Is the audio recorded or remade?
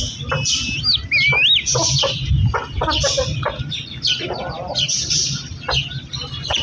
recorded